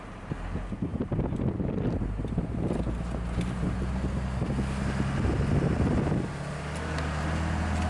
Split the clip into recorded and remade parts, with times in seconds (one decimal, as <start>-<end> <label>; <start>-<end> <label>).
0.0-7.9 recorded